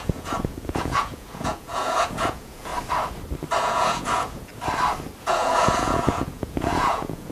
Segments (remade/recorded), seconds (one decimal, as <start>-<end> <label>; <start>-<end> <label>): 0.0-2.7 remade; 2.7-3.6 recorded; 3.6-4.5 remade; 4.5-5.2 recorded; 5.2-7.3 remade